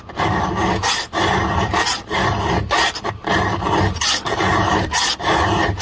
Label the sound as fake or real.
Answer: fake